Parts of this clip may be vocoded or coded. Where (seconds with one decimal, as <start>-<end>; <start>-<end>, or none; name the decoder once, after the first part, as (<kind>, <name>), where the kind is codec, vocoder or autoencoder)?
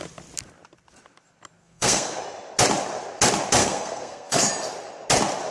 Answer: 1.6-2.2 (codec, SNAC); 3.6-4.5